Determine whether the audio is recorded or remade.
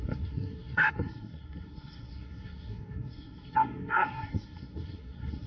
remade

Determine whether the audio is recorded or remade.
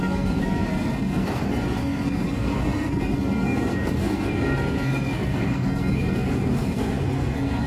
remade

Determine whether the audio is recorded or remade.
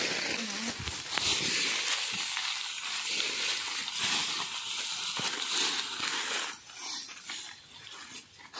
recorded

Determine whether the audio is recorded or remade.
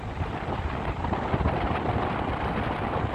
recorded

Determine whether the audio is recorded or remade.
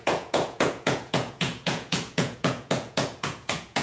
remade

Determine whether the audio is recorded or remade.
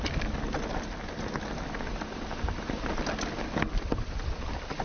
recorded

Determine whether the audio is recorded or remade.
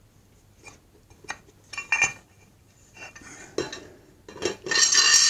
recorded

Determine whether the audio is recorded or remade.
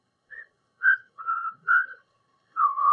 remade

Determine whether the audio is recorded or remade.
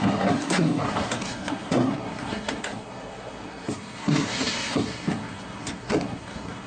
remade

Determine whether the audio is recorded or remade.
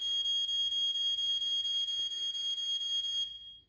recorded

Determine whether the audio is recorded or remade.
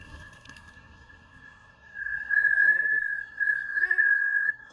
remade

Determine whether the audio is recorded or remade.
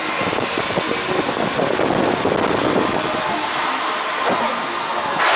recorded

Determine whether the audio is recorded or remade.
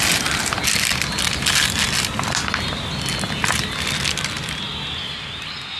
recorded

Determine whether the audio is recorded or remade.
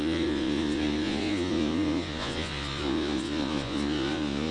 remade